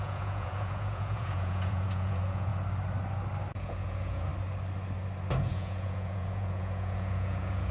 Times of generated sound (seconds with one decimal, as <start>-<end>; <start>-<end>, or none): 0.0-2.5; 3.5-4.3; 5.4-7.7